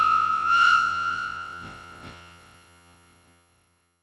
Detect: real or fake fake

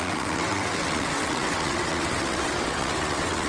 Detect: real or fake fake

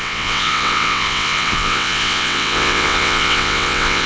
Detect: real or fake fake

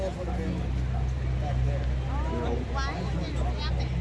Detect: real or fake real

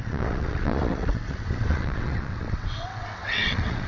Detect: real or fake fake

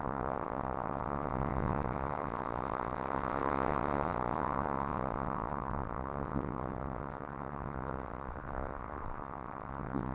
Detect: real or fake fake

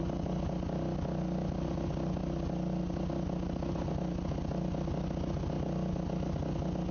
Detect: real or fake real